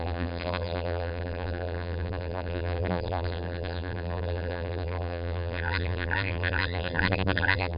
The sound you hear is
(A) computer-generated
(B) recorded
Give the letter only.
A